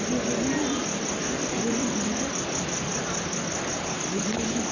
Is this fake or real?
real